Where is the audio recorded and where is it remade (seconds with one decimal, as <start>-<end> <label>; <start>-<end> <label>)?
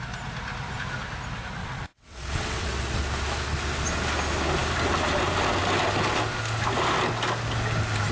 0.0-1.6 recorded; 1.6-2.7 remade; 2.7-8.1 recorded